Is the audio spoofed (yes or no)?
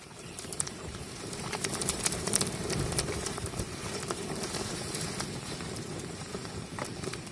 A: yes